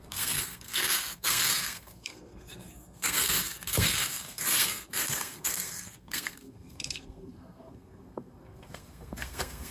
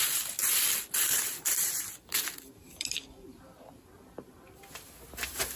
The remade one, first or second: first